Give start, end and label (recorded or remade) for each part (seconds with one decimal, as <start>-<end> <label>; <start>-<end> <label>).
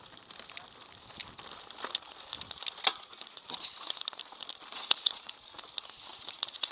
0.0-2.9 recorded; 2.9-3.5 remade; 3.5-4.7 recorded; 4.7-5.3 remade; 5.3-6.1 recorded; 6.1-6.7 remade